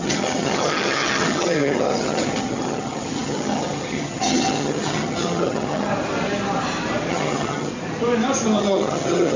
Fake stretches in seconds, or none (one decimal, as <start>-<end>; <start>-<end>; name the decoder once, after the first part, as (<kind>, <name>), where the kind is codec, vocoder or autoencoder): 0.0-5.9 (vocoder, HiFi-GAN); 7.1-7.7; 8.6-9.4